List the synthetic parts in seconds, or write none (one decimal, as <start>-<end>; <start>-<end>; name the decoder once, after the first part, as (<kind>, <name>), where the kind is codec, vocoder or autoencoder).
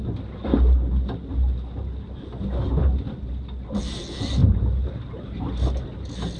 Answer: 4.4-5.7 (vocoder, BigVGAN v2)